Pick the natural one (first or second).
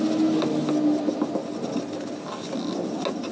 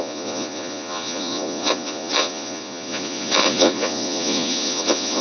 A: first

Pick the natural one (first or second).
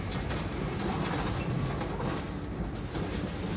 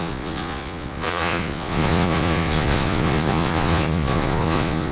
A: first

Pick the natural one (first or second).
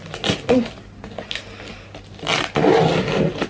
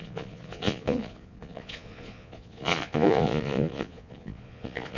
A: first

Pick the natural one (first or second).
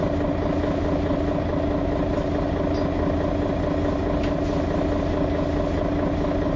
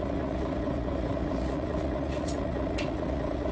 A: first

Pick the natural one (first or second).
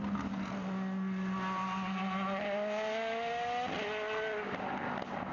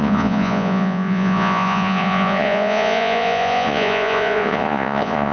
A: first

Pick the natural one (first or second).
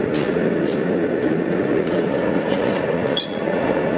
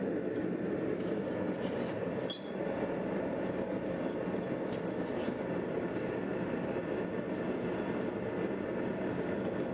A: second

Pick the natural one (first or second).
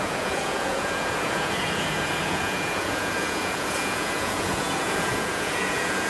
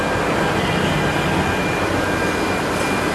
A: second